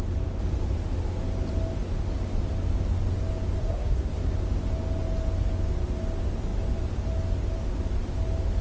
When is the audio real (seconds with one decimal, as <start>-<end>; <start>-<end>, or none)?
0.0-3.6; 4.3-8.6

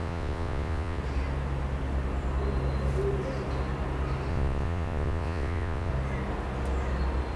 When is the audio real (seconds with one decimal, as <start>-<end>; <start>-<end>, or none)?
1.0-4.3; 5.9-7.4

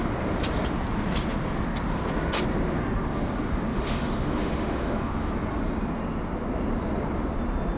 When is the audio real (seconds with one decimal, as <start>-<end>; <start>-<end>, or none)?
0.0-3.7; 5.3-7.8

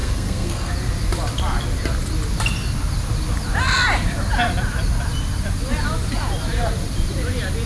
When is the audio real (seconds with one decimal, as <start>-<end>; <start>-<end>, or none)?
0.7-7.7

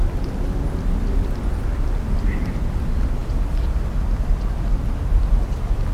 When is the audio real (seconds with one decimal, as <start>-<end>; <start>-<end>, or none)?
0.0-5.9

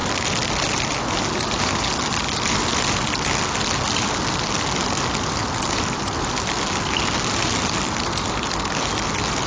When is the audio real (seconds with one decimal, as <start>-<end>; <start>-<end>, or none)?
0.0-9.5